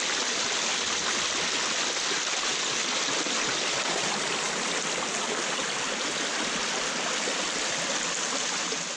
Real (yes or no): yes